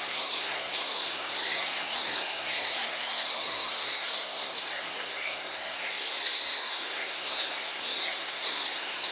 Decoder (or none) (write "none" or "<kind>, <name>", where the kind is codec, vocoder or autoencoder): codec, SNAC